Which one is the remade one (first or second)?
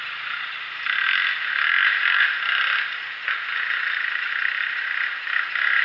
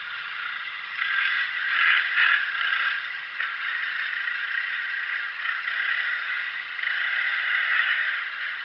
second